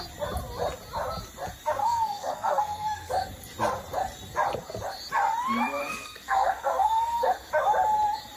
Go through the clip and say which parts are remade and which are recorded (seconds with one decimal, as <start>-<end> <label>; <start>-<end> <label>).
0.0-1.8 recorded; 1.8-3.1 remade; 3.1-5.8 recorded; 5.8-7.5 remade; 7.5-8.4 recorded